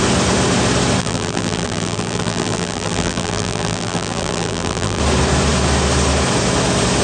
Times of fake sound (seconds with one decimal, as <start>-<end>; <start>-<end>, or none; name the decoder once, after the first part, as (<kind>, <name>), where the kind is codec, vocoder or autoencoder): 1.0-5.0 (vocoder, BigVGAN v2)